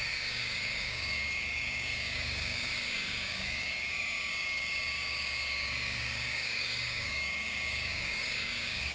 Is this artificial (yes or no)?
yes